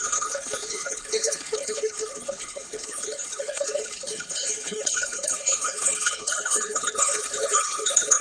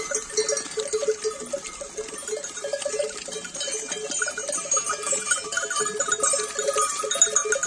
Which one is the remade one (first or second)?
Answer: first